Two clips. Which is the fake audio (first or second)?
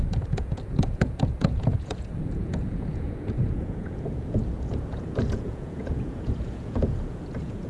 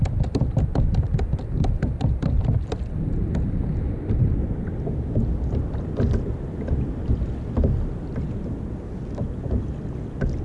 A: first